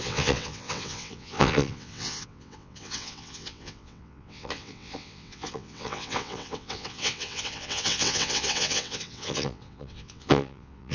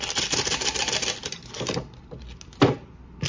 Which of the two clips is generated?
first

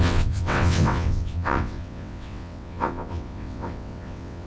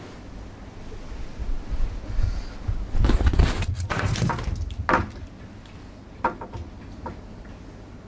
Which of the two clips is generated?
first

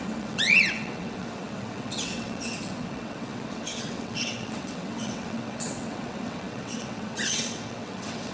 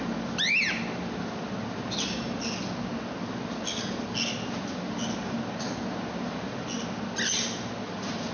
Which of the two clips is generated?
first